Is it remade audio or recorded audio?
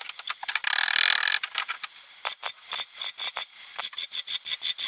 recorded